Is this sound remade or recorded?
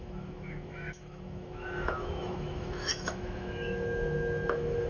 remade